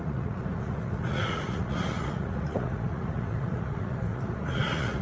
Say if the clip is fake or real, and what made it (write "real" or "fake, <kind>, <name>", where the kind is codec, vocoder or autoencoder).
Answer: fake, vocoder, Vocos